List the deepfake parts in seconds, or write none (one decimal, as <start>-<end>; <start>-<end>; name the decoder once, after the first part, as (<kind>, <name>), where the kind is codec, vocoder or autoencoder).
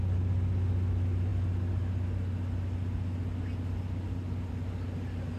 none